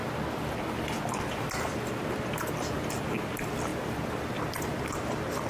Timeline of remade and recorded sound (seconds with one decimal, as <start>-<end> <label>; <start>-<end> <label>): 0.0-5.5 recorded